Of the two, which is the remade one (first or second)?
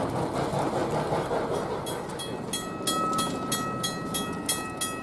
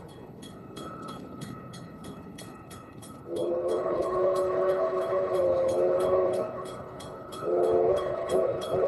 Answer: second